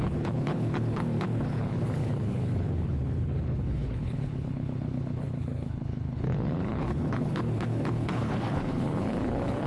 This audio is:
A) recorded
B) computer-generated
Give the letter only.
B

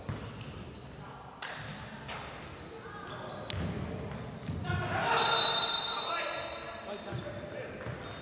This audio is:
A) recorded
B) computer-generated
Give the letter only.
A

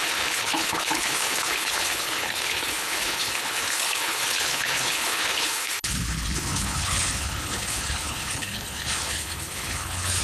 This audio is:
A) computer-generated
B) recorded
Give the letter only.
A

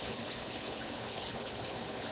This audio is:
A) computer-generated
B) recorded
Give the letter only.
A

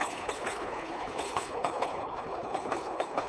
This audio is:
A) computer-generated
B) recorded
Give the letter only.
A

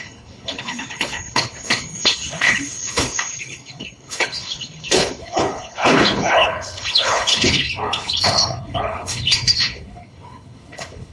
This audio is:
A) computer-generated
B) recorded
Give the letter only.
A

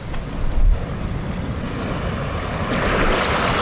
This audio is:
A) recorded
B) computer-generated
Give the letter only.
A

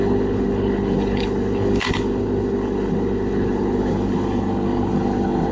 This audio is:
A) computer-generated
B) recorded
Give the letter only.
A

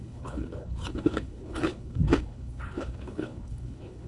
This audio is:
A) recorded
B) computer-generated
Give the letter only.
B